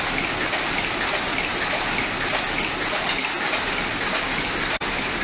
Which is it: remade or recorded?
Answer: recorded